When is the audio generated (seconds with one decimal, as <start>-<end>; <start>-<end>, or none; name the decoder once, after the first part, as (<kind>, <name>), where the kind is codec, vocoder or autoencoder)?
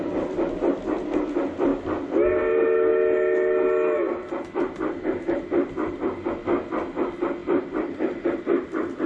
none